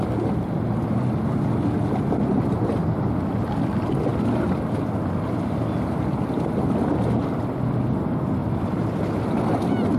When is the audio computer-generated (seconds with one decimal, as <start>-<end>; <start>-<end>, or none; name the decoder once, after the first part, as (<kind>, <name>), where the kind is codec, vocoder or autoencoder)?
8.4-9.3 (vocoder, BigVGAN v2)